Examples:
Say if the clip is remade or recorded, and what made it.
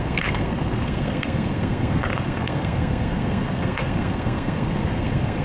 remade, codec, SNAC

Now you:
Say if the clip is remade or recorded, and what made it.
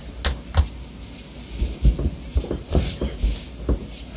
recorded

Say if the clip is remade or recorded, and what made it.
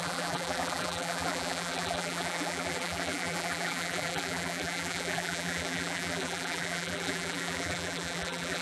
remade, vocoder, BigVGAN v2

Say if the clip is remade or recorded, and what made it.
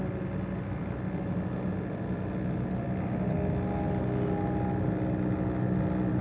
recorded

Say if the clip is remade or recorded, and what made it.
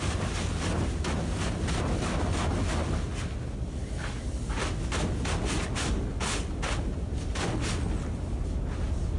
recorded